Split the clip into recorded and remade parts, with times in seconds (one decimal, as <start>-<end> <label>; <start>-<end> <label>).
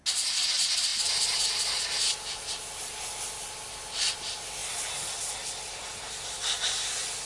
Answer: 0.0-7.3 recorded